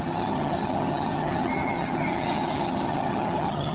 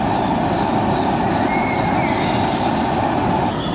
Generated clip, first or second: first